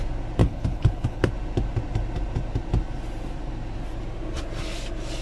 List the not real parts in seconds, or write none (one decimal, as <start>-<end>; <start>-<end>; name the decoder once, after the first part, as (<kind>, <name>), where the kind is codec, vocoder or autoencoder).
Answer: 0.4-1.3 (codec, HILCodec)

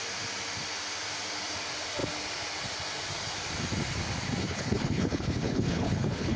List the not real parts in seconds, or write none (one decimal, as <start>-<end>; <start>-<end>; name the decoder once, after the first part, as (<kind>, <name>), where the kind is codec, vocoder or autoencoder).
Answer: 4.4-6.4 (codec, HILCodec)

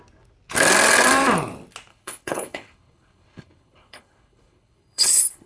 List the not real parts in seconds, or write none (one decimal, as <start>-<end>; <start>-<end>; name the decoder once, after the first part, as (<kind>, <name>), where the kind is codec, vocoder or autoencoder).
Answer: 1.9-5.5 (codec, HILCodec)